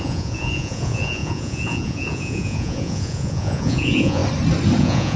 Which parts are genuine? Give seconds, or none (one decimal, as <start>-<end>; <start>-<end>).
4.2-4.8